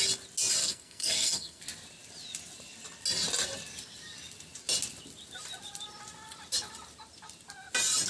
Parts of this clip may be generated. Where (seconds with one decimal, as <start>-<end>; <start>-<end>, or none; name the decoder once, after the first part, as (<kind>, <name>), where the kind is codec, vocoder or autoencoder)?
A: 0.6-1.6 (codec, SNAC)